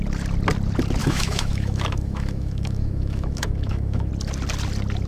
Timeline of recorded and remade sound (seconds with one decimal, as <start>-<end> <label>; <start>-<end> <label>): 0.0-1.0 recorded; 1.0-4.1 remade; 4.1-5.1 recorded